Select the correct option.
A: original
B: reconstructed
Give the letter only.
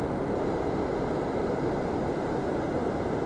A